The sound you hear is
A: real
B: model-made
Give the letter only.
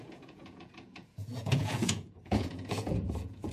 B